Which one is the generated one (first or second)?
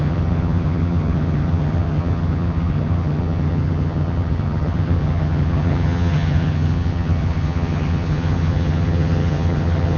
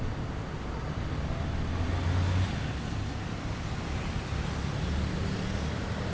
first